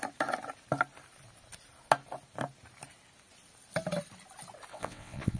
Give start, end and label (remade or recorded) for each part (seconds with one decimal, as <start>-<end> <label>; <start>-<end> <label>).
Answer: 0.0-4.7 recorded; 4.7-5.4 remade